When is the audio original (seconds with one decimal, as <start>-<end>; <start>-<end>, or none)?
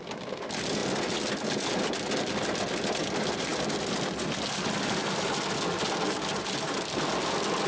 0.0-7.7